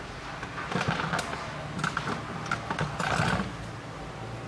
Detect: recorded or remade recorded